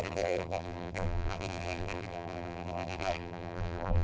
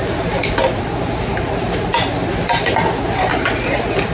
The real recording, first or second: second